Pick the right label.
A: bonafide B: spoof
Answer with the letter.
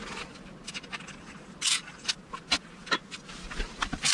A